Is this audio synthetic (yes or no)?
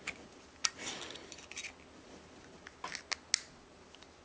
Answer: no